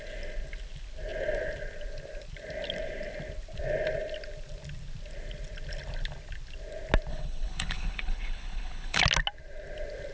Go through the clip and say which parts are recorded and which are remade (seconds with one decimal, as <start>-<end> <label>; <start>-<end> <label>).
0.0-7.1 recorded; 7.1-9.0 remade; 9.0-10.1 recorded